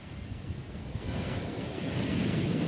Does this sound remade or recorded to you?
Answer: remade